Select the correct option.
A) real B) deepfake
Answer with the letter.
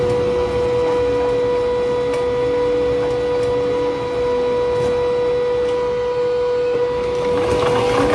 A